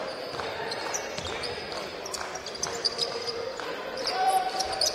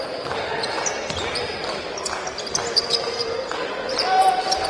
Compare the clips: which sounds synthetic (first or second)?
first